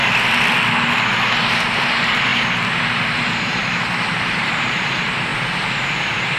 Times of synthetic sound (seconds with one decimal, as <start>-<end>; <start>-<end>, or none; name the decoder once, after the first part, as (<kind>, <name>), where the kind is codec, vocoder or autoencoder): 1.4-3.6 (vocoder, BigVGAN v2); 4.1-5.3; 6.0-6.4